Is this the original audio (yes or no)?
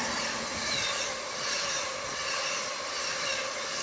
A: yes